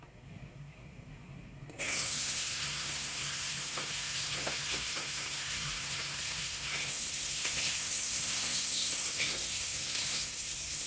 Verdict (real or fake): fake